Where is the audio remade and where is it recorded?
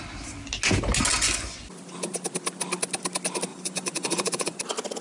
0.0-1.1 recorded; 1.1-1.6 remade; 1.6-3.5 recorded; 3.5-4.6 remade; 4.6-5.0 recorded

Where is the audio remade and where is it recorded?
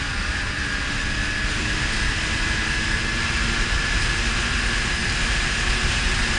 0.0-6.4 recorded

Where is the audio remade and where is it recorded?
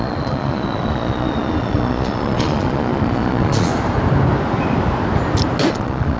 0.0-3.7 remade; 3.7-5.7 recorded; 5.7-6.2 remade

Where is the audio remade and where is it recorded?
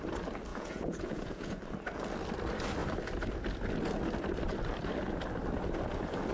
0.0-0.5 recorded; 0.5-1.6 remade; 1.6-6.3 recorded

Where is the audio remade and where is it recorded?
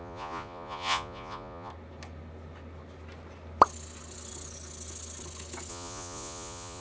0.0-1.7 remade; 1.7-5.7 recorded; 5.7-6.8 remade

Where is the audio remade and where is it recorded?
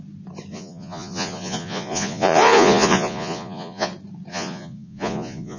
0.0-0.5 recorded; 0.5-3.9 remade; 3.9-4.3 recorded; 4.3-5.6 remade